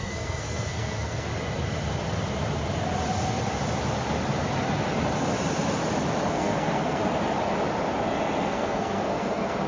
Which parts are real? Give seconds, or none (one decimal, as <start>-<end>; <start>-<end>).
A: 1.3-6.3; 7.0-8.4